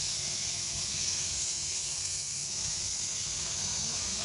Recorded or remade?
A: remade